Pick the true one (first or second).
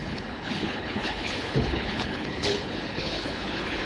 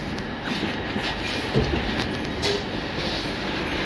second